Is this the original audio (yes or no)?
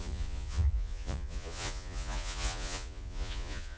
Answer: no